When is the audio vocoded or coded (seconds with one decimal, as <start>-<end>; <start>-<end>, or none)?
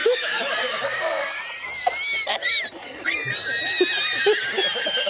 0.0-1.4